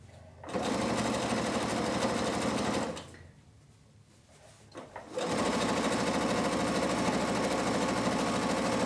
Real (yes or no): yes